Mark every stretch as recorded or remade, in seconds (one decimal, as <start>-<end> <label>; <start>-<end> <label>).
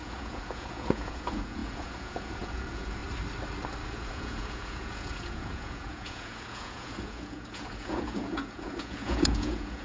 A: 0.0-3.0 remade; 3.0-3.9 recorded; 3.9-9.8 remade